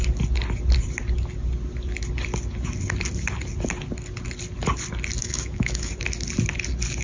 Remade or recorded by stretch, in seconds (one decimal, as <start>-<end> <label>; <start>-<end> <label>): 0.0-5.2 recorded; 5.2-5.9 remade; 5.9-7.0 recorded